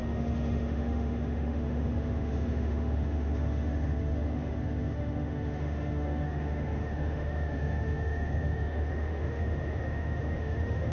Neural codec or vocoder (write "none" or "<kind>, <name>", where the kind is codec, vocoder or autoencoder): autoencoder, DAC-VAE